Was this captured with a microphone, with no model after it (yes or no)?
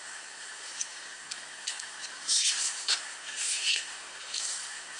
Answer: no